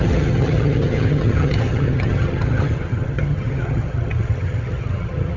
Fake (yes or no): yes